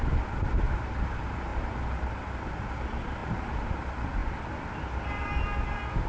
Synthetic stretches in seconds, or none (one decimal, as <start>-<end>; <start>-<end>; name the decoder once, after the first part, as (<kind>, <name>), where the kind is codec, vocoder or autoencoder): 1.5-2.1 (vocoder, BigVGAN v2)